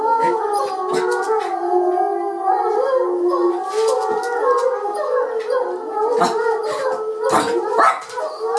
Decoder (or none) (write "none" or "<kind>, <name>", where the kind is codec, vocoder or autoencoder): none